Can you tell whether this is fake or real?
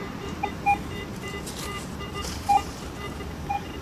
fake